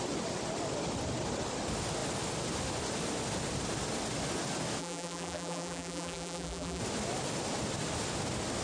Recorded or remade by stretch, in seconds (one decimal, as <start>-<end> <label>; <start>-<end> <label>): 0.0-4.8 recorded; 4.8-6.8 remade; 6.8-8.6 recorded